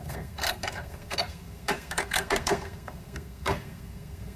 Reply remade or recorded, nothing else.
remade